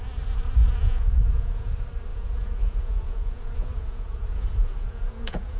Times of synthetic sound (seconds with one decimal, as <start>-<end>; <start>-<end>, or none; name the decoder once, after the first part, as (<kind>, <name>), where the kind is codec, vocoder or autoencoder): 0.6-1.7 (vocoder, Vocos); 2.1-5.6